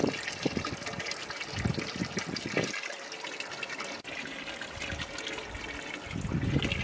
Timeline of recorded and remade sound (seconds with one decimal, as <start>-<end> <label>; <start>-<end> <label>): 0.0-6.8 recorded